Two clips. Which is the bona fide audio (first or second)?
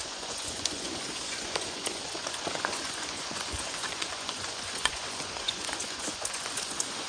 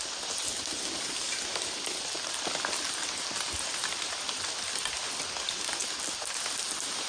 second